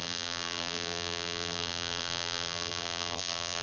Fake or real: fake